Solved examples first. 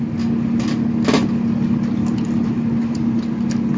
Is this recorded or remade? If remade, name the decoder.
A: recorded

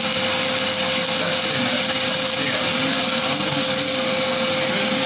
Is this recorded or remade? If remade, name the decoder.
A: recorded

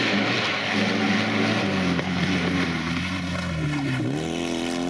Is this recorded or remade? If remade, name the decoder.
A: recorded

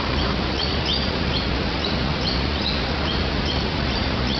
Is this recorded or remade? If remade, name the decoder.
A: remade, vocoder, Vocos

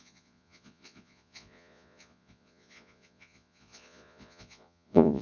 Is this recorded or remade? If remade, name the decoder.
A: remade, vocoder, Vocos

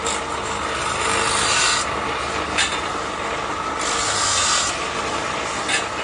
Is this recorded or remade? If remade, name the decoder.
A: recorded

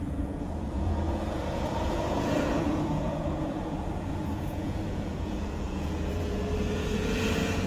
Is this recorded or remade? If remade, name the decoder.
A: remade, vocoder, Vocos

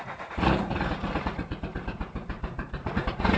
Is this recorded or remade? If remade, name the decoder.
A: remade, vocoder, Vocos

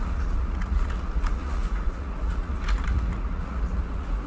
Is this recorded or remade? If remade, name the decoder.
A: remade, vocoder, Vocos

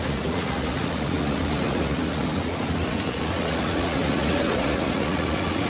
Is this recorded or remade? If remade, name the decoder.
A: remade, vocoder, Vocos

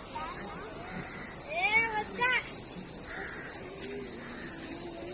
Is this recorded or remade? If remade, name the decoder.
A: recorded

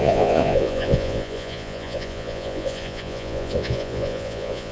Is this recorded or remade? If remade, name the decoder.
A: remade, vocoder, Vocos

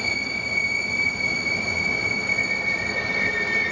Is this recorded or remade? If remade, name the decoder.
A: recorded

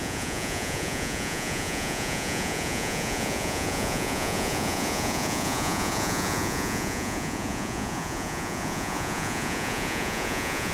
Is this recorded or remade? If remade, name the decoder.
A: remade, vocoder, Vocos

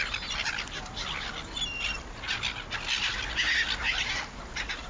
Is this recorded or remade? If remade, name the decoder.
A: recorded